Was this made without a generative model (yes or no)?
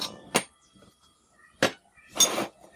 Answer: yes